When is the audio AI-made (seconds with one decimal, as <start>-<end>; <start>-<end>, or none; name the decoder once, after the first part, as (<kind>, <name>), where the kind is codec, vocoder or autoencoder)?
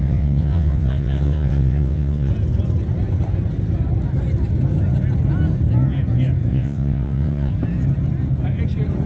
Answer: 0.0-2.3 (vocoder, WaveNeXt); 6.5-7.5